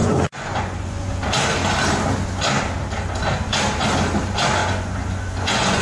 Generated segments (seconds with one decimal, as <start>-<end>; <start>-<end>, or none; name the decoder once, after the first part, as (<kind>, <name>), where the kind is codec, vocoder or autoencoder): 0.0-1.1 (vocoder, Vocos); 4.6-5.8